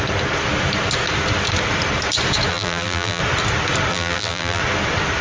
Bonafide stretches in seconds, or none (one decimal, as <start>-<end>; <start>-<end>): 0.0-2.5; 3.2-3.9; 4.6-5.2